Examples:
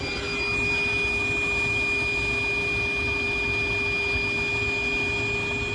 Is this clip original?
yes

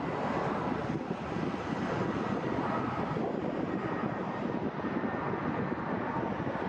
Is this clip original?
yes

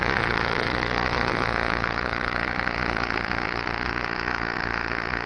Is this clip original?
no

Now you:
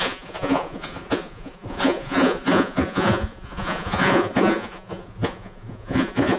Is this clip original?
no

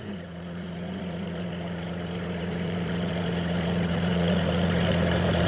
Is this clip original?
no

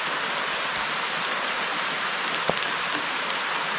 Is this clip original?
yes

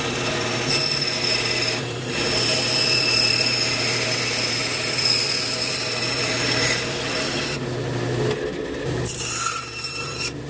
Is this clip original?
yes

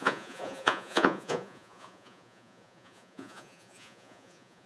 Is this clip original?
no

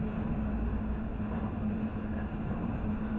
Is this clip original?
yes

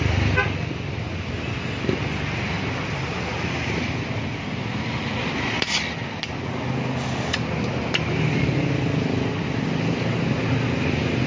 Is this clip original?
yes